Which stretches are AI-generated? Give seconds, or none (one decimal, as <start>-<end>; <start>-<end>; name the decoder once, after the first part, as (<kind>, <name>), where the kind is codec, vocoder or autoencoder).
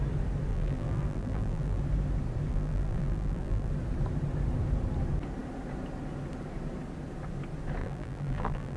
0.5-1.8 (vocoder, BigVGAN v2); 2.5-3.7; 7.8-8.8